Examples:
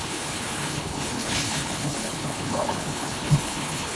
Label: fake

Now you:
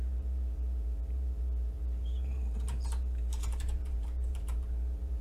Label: fake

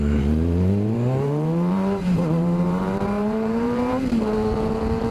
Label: fake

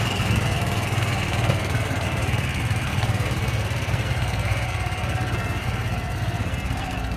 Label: fake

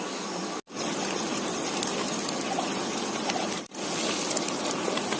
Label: real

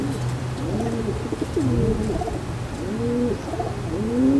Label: real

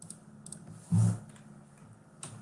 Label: real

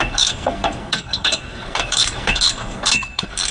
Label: fake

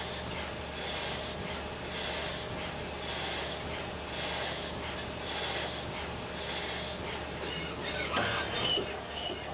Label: real